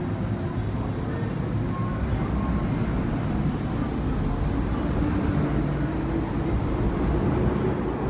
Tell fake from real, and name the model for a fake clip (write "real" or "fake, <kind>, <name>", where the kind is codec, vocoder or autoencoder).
real